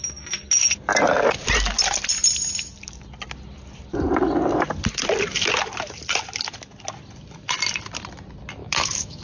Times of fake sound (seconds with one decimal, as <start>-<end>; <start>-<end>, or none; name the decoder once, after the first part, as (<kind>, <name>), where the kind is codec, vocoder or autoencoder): 8.6-9.2 (autoencoder, DAC-VAE)